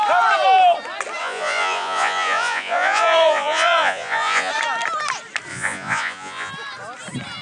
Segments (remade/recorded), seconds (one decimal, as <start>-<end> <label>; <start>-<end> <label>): 0.0-1.2 recorded; 1.2-4.5 remade; 4.5-5.5 recorded; 5.5-6.5 remade; 6.5-7.4 recorded